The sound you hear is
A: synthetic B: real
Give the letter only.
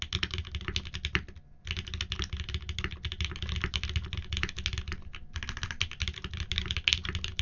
B